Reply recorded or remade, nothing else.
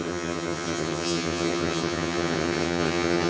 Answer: remade